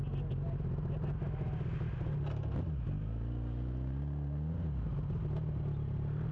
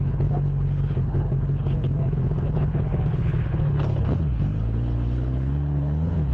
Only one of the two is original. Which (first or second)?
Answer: first